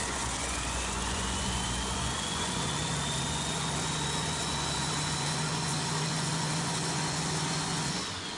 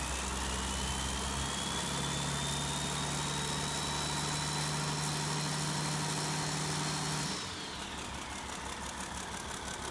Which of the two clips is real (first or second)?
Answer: second